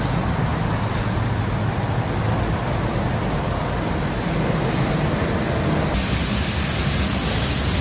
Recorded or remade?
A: recorded